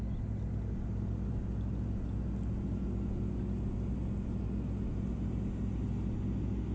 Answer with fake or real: real